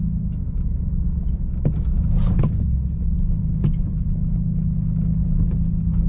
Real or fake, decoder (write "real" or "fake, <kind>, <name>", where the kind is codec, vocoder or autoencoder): real